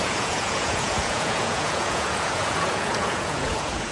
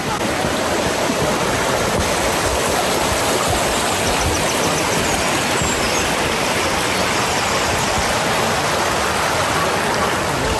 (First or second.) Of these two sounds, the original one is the second